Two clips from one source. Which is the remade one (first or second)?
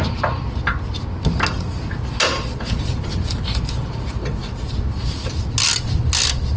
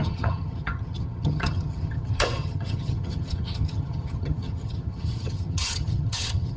second